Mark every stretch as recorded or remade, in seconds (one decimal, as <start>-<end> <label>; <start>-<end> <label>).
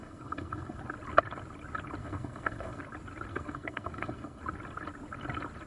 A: 0.0-0.8 remade; 0.8-2.0 recorded; 2.0-2.8 remade; 2.8-3.3 recorded; 3.3-4.4 remade; 4.4-5.7 recorded